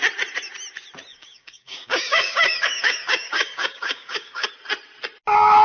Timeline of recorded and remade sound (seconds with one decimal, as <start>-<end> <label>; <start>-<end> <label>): 0.0-1.1 recorded; 1.1-4.5 remade; 4.5-5.6 recorded